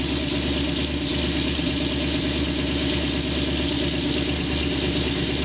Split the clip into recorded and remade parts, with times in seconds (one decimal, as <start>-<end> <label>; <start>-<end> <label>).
0.0-5.4 recorded